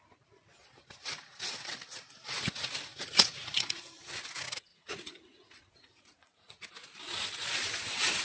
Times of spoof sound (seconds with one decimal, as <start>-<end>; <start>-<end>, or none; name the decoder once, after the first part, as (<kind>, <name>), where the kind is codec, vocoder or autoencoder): 2.9-3.8 (vocoder, Vocos); 4.7-6.7